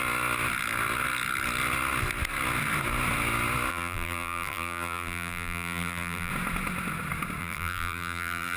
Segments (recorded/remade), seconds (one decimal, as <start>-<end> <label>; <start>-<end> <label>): 0.0-3.7 recorded; 3.7-6.3 remade; 6.3-7.4 recorded; 7.4-8.6 remade